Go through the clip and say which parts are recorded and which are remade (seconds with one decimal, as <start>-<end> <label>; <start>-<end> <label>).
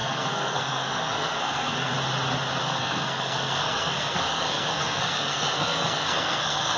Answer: 0.0-1.9 remade; 1.9-2.6 recorded; 2.6-6.8 remade